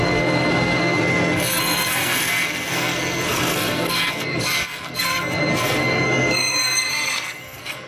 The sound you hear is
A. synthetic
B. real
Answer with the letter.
A